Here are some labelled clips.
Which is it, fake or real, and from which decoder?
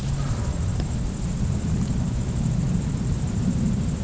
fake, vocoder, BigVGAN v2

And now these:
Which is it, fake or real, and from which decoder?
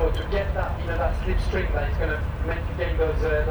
real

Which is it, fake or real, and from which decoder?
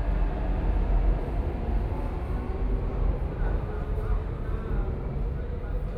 real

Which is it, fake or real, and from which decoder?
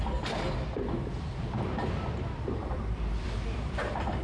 fake, vocoder, BigVGAN v2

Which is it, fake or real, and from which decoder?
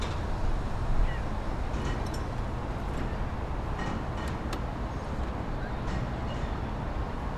real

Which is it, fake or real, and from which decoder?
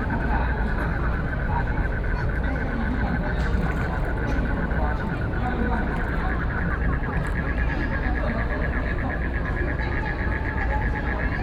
real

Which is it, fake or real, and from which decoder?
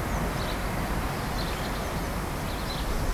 real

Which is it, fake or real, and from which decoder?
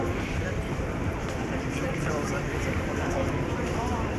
fake, vocoder, BigVGAN v2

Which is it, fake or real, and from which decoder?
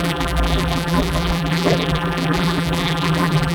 fake, vocoder, BigVGAN v2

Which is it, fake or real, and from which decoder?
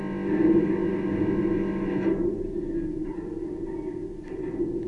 real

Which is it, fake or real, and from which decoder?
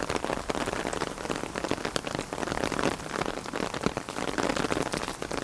real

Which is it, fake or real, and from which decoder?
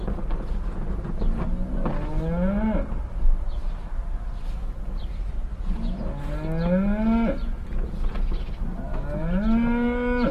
real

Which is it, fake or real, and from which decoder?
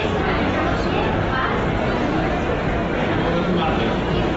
real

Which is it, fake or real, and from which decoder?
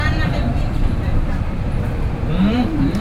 fake, vocoder, BigVGAN v2